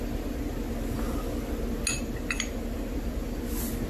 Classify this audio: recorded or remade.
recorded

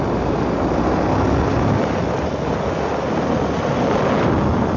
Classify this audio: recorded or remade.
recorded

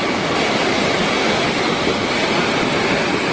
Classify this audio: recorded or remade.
recorded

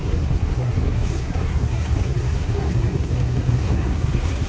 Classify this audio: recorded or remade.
remade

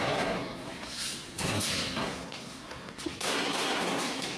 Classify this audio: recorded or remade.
remade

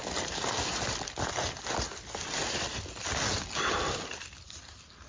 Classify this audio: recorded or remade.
recorded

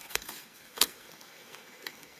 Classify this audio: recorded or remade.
remade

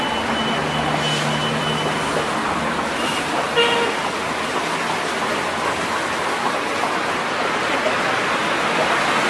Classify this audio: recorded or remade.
recorded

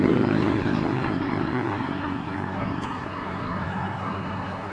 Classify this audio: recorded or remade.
remade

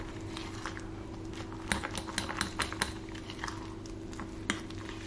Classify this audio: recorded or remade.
recorded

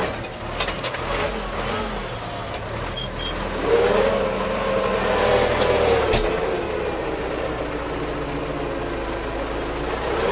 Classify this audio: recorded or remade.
recorded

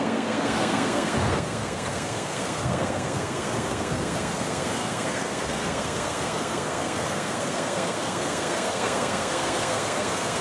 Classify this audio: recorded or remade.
remade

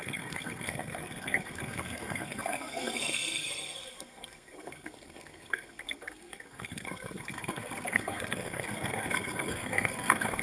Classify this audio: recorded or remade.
remade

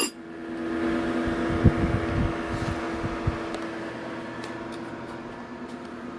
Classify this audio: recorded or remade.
recorded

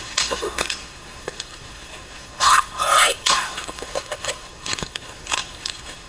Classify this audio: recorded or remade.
remade